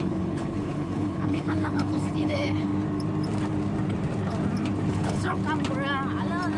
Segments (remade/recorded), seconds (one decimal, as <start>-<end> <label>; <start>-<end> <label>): 0.0-2.7 remade; 2.7-4.9 recorded; 4.9-5.4 remade; 5.4-6.6 recorded